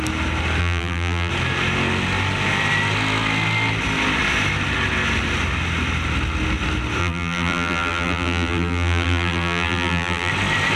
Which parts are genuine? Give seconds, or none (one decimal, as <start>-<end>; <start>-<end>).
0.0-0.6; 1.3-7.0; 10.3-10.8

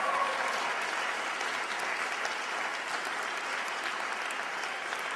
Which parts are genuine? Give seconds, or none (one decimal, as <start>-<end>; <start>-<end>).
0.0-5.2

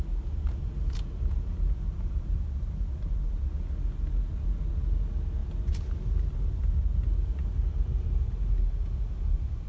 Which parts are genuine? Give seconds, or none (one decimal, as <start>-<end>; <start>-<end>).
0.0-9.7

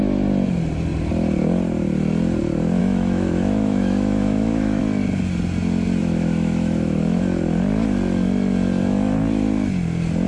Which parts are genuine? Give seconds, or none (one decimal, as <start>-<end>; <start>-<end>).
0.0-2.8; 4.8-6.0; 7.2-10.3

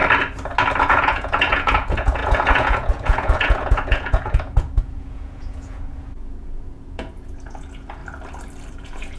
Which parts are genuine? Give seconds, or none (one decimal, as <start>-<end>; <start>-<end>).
0.0-0.8; 8.0-8.7

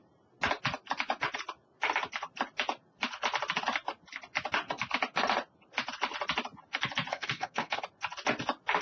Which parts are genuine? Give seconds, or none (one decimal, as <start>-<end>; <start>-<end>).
0.0-7.1; 7.8-8.8